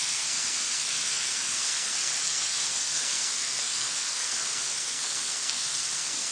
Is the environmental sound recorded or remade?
remade